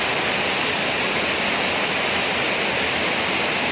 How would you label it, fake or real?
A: real